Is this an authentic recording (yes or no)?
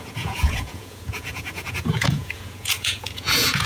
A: no